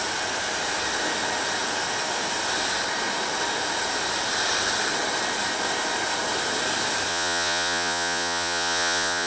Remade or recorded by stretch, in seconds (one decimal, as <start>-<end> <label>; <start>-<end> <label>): 0.0-7.1 recorded; 7.1-9.3 remade